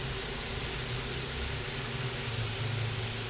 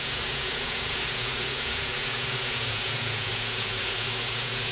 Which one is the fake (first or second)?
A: second